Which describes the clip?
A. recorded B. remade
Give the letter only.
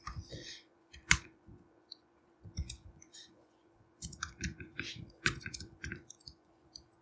B